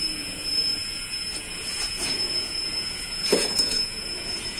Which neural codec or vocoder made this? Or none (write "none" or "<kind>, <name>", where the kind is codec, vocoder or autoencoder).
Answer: vocoder, Vocos